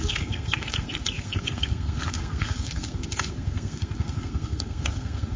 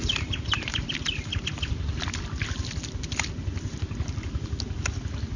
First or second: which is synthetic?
first